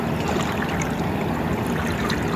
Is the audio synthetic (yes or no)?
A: no